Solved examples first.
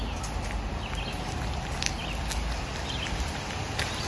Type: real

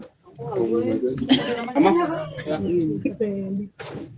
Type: real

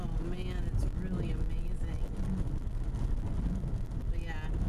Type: real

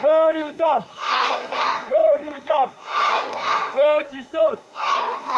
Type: fake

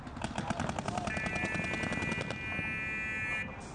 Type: real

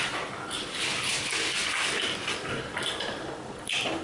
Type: real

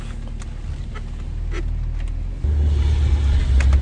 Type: real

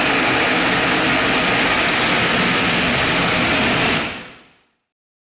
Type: real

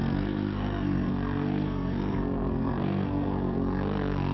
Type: fake